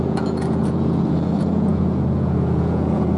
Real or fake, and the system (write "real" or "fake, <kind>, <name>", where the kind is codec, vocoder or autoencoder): fake, vocoder, Vocos